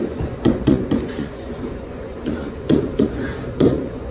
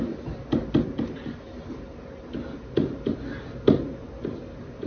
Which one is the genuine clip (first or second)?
second